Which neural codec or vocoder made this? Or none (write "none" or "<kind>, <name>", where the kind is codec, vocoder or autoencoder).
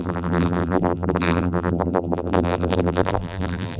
vocoder, BigVGAN v2